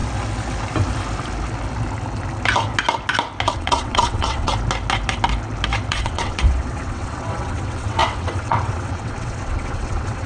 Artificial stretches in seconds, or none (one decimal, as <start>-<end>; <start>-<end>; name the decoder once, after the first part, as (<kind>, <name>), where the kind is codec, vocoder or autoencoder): 3.5-4.5 (vocoder, WaveNeXt); 5.9-10.3